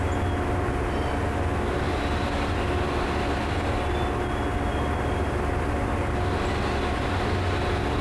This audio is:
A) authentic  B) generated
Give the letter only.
A